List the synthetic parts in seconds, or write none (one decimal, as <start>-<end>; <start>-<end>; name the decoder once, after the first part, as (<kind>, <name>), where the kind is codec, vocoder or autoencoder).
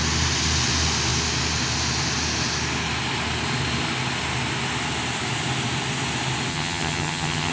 6.5-7.5 (vocoder, HiFi-GAN)